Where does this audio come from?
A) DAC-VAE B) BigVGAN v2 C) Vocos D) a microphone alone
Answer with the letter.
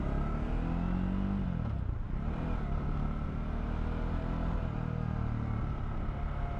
D